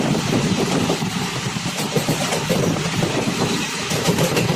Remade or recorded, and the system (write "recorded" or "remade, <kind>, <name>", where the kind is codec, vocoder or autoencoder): remade, vocoder, BigVGAN v2